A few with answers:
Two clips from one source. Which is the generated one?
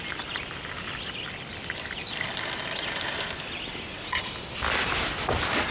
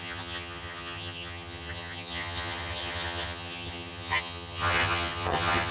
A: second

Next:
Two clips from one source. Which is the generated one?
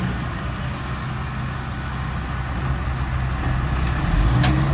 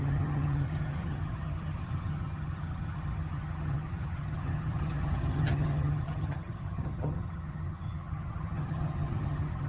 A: second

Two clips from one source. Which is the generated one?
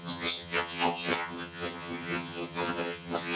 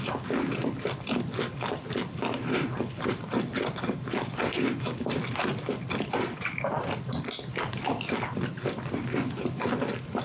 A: first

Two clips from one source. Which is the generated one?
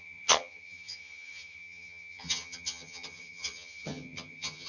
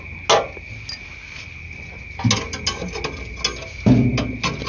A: first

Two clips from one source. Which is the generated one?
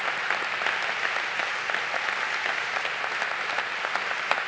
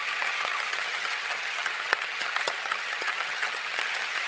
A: second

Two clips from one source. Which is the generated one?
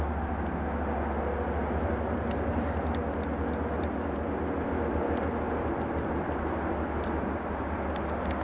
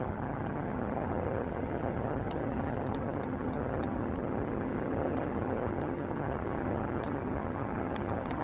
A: second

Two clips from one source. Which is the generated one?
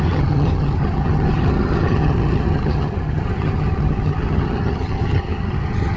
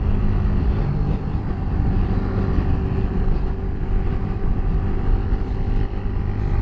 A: first